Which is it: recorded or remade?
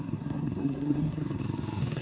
remade